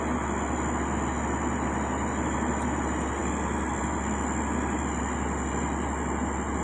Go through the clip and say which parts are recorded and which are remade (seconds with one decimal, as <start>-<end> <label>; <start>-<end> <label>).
0.0-6.6 recorded